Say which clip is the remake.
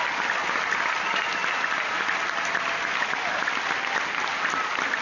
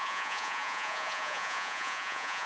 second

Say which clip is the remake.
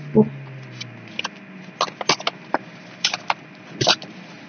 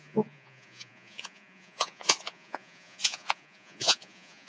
second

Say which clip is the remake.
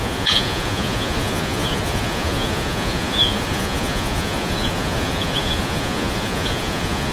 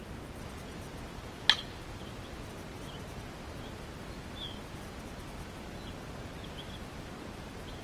first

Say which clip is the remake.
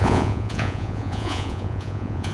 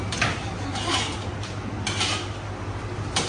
first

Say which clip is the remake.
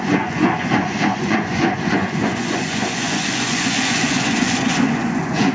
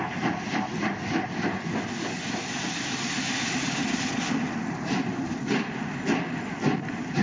first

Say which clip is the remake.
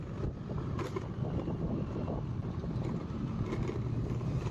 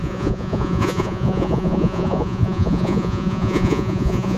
second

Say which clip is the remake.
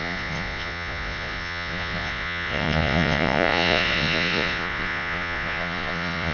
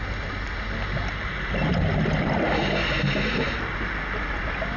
first